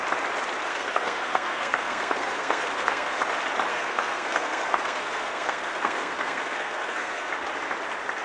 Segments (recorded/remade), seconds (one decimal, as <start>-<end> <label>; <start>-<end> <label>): 0.0-0.7 recorded; 0.7-3.2 remade; 3.2-3.7 recorded; 3.7-7.3 remade; 7.3-8.2 recorded